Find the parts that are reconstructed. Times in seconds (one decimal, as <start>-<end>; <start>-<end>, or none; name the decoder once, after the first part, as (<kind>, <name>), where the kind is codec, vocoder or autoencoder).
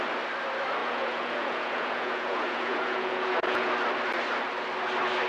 0.8-3.7 (vocoder, Vocos)